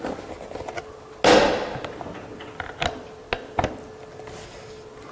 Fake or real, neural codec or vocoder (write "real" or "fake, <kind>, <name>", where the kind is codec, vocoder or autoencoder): real